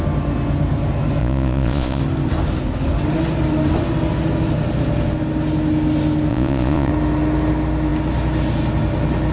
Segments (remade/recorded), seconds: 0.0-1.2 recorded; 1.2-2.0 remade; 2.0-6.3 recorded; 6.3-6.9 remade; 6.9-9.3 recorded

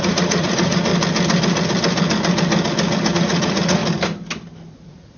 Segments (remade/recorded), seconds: 0.0-0.9 remade; 0.9-3.1 recorded; 3.1-3.8 remade; 3.8-4.7 recorded; 4.7-5.2 remade

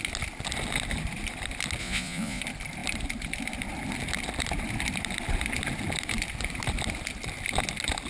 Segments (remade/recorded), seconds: 0.0-1.8 recorded; 1.8-2.4 remade; 2.4-8.1 recorded

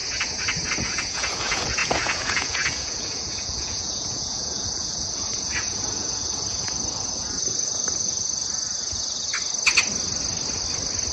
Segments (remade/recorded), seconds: 0.0-0.7 recorded; 0.7-9.3 remade; 9.3-11.1 recorded

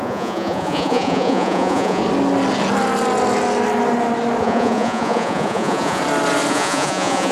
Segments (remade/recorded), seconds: 0.0-2.0 remade; 2.0-4.4 recorded; 4.4-6.0 remade; 6.0-6.5 recorded; 6.5-7.3 remade

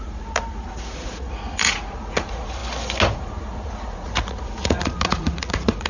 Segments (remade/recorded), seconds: 0.0-2.6 remade; 2.6-3.1 recorded; 3.1-5.9 remade

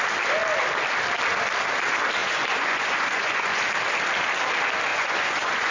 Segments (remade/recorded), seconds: 0.0-2.2 recorded; 2.2-3.6 remade; 3.6-4.9 recorded; 4.9-5.7 remade